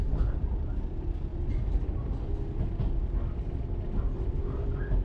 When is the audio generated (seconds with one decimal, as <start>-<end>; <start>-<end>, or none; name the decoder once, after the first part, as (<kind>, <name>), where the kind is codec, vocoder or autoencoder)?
none